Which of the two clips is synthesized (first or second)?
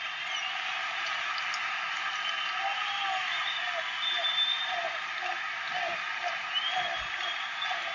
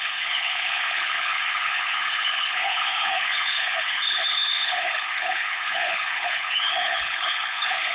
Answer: second